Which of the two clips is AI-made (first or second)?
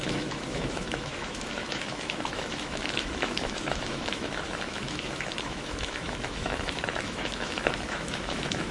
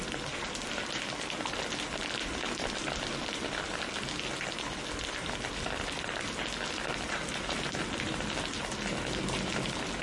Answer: first